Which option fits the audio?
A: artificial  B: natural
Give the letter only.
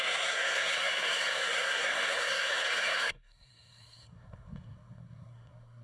A